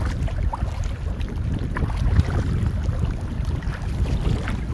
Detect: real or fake real